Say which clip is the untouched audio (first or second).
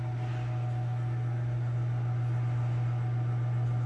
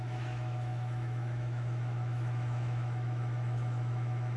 first